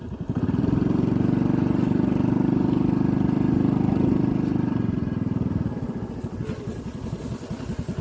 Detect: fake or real real